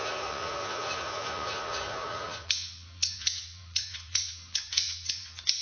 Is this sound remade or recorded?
remade